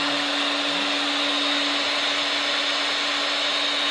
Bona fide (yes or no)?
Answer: yes